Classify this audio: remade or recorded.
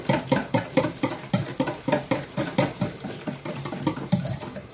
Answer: recorded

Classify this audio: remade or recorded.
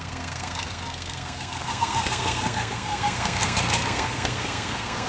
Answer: remade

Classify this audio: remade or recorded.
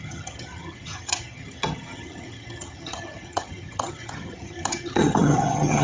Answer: remade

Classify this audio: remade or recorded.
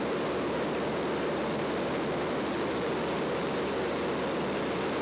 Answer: recorded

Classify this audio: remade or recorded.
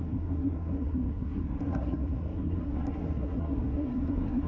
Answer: remade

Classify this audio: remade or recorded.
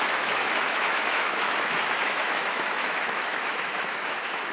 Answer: remade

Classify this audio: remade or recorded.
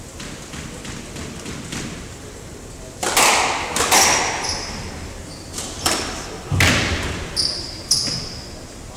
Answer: recorded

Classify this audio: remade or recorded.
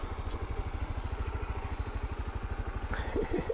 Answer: remade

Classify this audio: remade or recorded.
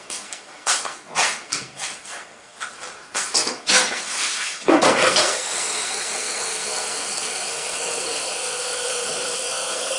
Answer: remade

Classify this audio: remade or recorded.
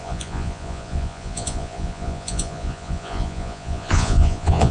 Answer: remade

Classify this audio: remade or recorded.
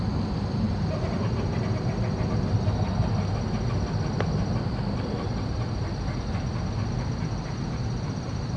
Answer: recorded